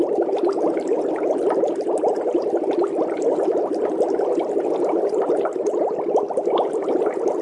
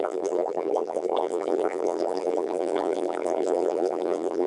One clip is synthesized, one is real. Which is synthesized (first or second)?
second